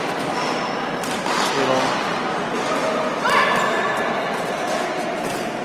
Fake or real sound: real